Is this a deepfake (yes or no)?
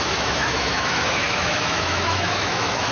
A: yes